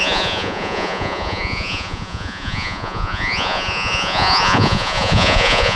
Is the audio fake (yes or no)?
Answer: yes